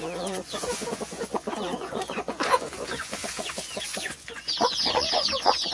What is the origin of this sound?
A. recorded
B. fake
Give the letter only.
B